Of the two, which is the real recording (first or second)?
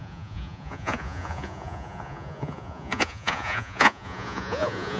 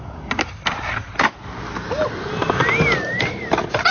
second